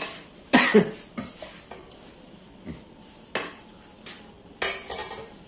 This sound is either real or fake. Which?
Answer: real